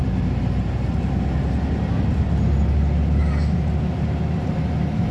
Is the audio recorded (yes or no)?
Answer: yes